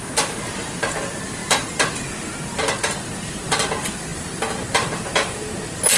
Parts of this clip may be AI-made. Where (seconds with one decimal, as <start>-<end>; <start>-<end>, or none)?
none